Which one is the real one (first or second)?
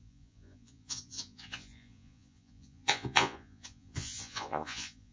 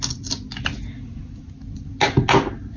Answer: second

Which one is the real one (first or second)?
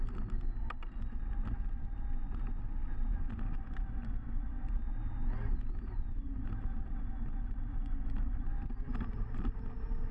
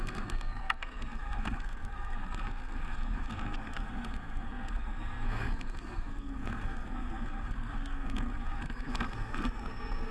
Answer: first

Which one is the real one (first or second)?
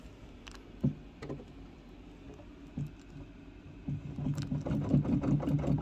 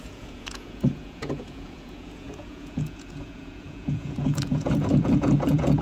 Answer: first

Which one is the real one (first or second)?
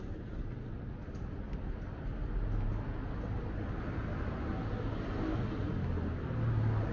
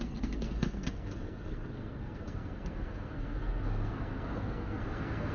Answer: first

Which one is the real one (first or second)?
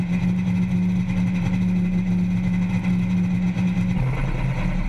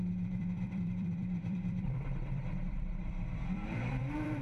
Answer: first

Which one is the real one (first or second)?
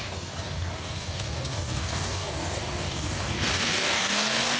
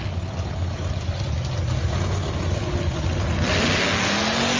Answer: second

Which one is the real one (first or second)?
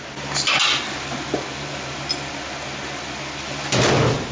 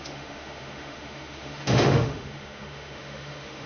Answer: first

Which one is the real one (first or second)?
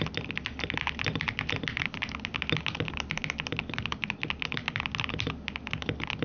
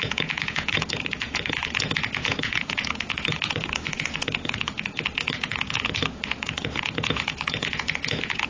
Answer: first